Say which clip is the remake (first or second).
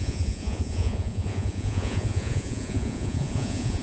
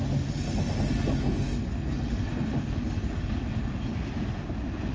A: first